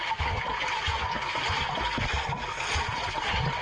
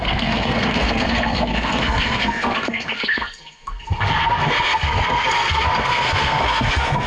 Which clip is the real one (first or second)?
first